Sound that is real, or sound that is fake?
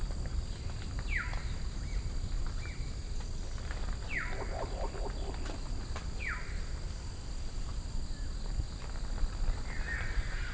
real